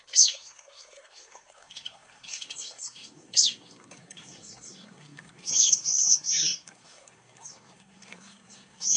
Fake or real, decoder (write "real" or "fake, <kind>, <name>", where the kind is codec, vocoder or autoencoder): fake, codec, SNAC